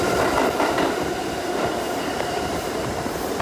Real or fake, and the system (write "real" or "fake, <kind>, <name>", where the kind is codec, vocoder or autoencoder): fake, vocoder, BigVGAN v2